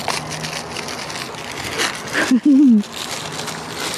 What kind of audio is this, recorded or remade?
recorded